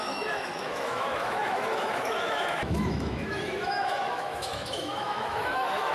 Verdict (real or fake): fake